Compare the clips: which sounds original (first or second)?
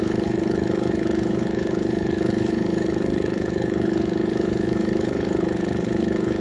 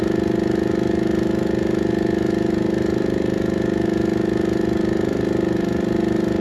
second